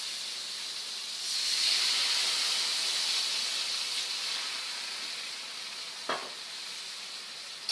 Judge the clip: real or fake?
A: real